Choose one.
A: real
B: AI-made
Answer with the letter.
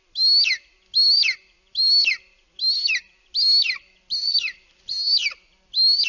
A